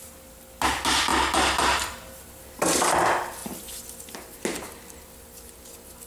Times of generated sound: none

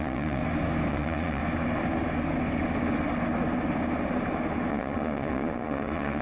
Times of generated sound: 0.0-0.4 (vocoder, Vocos); 0.9-1.4; 4.7-6.2

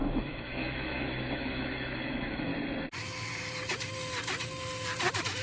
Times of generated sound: 0.0-2.5 (autoencoder, DAC-VAE)

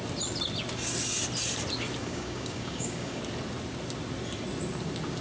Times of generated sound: 2.0-3.2 (codec, DAC)

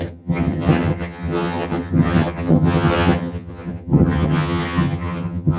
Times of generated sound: 0.0-5.6 (vocoder, HiFi-GAN)